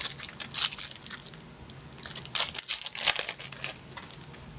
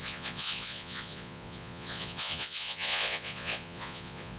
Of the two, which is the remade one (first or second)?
second